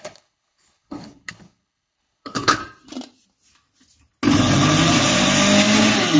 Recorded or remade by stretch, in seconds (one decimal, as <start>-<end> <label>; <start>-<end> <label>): 0.0-2.6 remade; 2.6-6.2 recorded